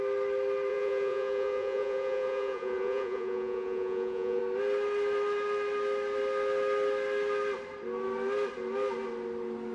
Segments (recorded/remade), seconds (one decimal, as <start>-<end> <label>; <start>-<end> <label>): 0.0-0.7 recorded; 0.7-4.4 remade; 4.4-9.7 recorded